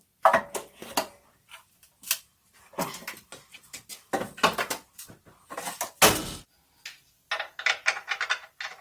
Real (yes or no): yes